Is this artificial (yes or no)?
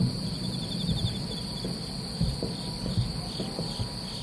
no